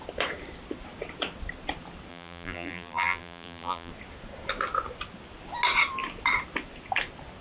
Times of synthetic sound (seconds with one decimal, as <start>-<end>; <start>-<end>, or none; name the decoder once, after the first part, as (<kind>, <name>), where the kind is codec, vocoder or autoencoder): 2.1-3.9 (vocoder, BigVGAN v2)